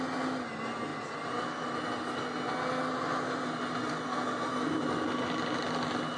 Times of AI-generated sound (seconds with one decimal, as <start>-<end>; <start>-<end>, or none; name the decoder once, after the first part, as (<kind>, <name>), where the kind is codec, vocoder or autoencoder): none